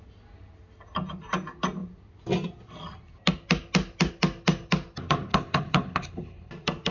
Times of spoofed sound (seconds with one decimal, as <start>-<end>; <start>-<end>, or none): 5.3-6.5